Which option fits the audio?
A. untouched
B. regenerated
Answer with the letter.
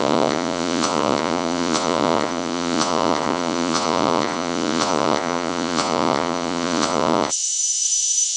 B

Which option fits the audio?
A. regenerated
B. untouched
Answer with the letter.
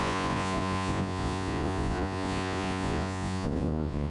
A